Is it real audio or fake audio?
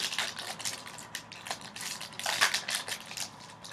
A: real